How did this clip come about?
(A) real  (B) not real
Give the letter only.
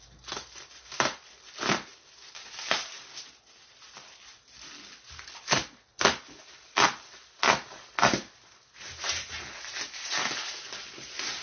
A